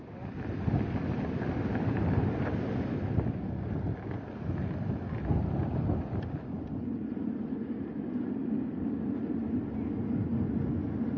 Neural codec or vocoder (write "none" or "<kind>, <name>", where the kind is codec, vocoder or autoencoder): none